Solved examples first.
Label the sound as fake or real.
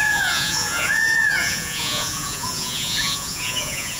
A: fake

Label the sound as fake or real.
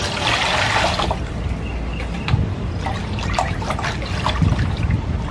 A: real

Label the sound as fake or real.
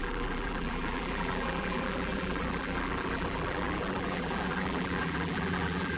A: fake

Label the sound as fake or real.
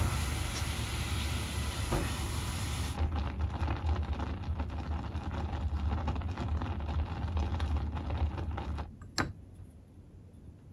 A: real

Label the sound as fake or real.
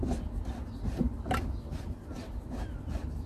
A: real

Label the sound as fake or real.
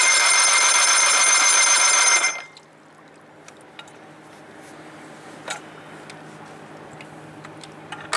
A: real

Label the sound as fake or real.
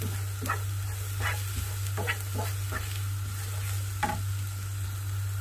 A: real